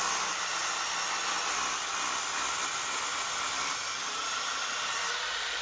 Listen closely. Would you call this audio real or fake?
fake